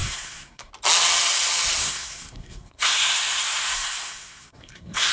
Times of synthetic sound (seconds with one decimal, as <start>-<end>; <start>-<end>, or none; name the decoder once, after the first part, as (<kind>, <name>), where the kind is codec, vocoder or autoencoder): 0.0-0.7 (codec, SNAC); 1.8-5.1